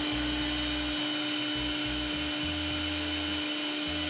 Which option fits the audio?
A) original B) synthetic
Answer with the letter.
A